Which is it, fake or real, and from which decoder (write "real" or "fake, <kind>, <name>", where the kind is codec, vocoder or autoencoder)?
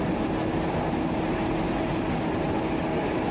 real